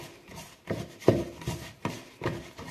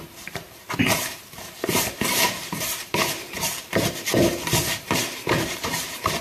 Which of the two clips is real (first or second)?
first